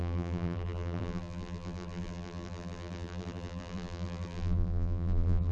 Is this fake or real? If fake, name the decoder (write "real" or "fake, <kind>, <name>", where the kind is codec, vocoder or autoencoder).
fake, vocoder, BigVGAN v2